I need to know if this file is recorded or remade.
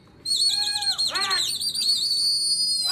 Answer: recorded